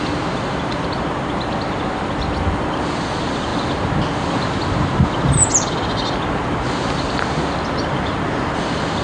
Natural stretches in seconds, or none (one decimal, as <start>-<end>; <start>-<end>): 0.0-9.0